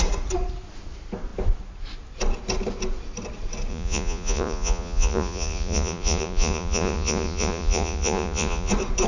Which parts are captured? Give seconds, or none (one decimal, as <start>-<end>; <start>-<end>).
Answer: 0.0-3.7; 8.7-9.1